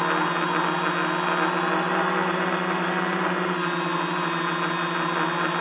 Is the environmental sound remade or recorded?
recorded